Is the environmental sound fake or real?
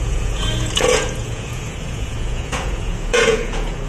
fake